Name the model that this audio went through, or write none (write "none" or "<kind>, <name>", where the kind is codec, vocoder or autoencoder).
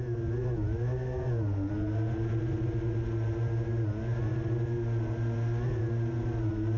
none